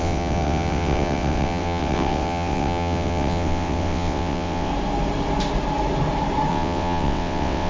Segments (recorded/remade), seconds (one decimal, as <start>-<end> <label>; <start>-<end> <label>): 0.0-4.7 remade; 4.7-6.5 recorded; 6.5-7.7 remade